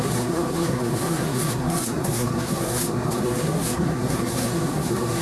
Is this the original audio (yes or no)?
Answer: no